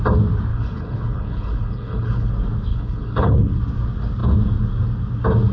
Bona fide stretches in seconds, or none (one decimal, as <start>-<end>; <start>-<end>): 0.0-0.5; 2.3-2.7; 3.6-5.5